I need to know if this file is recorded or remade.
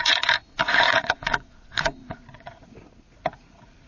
remade